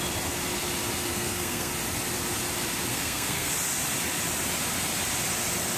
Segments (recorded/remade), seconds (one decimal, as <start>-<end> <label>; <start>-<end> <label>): 0.0-1.1 recorded; 1.1-1.7 remade; 1.7-2.9 recorded; 2.9-3.5 remade; 3.5-5.8 recorded